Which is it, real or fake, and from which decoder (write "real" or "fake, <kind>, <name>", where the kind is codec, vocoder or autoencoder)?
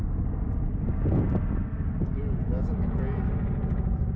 real